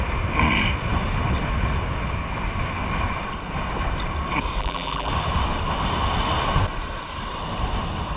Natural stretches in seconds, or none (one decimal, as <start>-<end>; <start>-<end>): 0.0-4.6; 5.1-8.2